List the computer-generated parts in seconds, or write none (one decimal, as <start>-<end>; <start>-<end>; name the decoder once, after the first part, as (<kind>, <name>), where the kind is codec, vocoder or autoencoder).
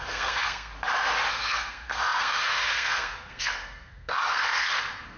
0.0-0.7 (codec, SNAC); 1.3-5.2